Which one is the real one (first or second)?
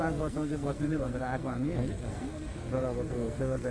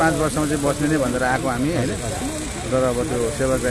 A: second